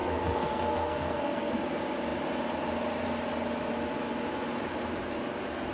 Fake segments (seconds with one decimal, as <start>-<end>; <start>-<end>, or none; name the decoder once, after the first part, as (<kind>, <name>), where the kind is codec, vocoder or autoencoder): 0.0-1.6 (codec, SNAC)